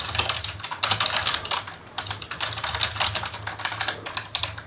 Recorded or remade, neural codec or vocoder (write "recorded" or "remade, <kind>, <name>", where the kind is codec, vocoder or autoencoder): recorded